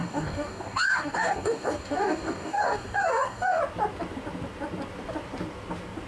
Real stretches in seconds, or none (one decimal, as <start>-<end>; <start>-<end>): 3.6-6.1